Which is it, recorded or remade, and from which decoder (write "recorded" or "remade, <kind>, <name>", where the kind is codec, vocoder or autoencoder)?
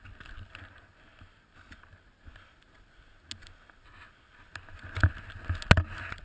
recorded